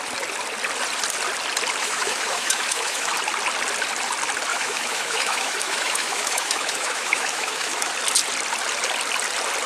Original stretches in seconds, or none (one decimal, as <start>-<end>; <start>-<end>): 0.0-1.8; 3.1-4.5; 7.9-9.7